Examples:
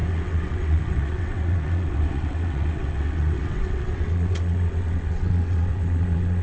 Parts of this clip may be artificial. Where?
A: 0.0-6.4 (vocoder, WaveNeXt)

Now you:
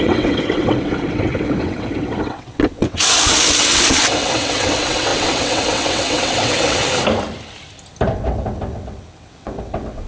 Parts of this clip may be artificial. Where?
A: 0.0-6.8 (vocoder, WaveNeXt); 8.1-10.1

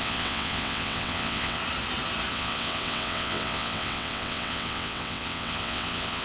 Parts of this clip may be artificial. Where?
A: 0.0-1.6 (vocoder, WaveNeXt); 2.3-6.2

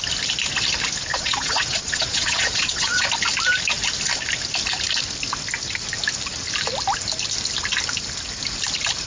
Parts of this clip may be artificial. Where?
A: 1.1-3.1 (vocoder, WaveNeXt)

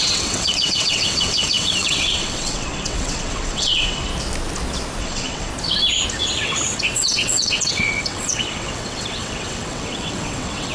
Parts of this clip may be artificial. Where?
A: 0.0-4.1 (vocoder, WaveNeXt); 5.0-5.5; 6.1-10.7

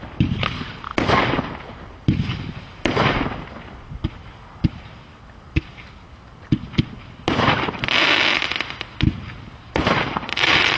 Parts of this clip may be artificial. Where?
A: none